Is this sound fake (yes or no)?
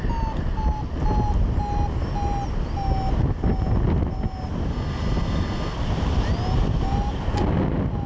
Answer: no